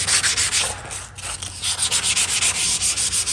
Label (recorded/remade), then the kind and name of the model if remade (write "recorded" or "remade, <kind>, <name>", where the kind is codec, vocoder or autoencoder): recorded